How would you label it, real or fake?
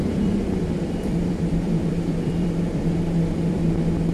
fake